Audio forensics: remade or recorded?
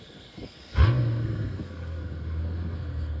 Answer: remade